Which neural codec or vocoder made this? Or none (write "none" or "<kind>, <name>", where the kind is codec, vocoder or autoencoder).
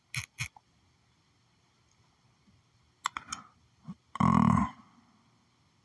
none